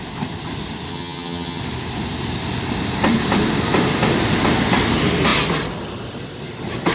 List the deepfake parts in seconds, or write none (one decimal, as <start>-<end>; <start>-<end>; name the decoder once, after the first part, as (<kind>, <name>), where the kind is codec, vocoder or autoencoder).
0.9-1.6 (vocoder, HiFi-GAN)